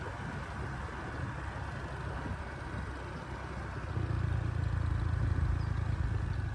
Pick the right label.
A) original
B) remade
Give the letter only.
A